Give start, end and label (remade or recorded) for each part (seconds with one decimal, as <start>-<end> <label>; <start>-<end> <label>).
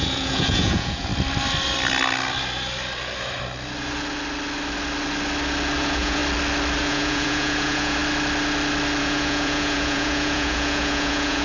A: 0.0-1.1 remade; 1.1-5.8 recorded; 5.8-6.2 remade; 6.2-6.8 recorded; 6.8-8.0 remade; 8.0-9.0 recorded; 9.0-11.4 remade